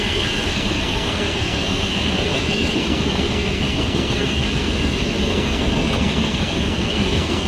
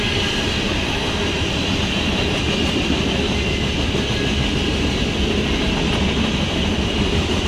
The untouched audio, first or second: second